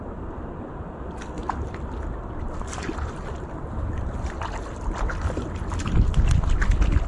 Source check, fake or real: real